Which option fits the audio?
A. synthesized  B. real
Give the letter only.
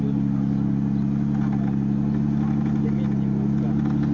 B